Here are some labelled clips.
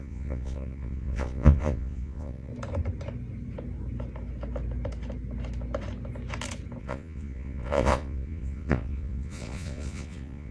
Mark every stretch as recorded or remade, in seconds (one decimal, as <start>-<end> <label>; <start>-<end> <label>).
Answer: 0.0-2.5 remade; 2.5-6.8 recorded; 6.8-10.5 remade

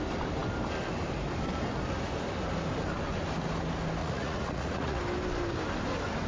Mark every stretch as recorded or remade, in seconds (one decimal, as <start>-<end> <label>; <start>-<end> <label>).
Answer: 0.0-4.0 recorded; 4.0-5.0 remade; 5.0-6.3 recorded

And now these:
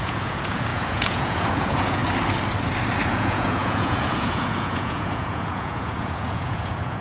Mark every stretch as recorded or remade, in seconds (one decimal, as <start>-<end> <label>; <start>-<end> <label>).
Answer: 0.0-2.0 remade; 2.0-3.1 recorded; 3.1-7.0 remade

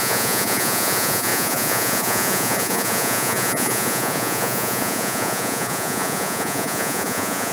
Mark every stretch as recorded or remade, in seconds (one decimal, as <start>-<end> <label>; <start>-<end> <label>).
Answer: 0.0-7.5 remade

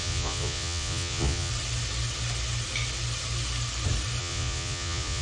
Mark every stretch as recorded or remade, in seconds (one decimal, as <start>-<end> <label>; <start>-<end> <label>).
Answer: 0.0-1.5 remade; 1.5-4.2 recorded; 4.2-5.2 remade

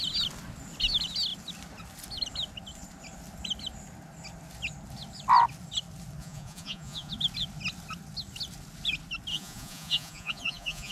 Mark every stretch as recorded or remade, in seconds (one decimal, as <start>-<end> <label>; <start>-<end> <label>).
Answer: 0.0-6.2 recorded; 6.2-7.1 remade; 7.1-9.3 recorded; 9.3-10.9 remade